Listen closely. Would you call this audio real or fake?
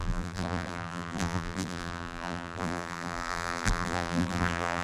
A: fake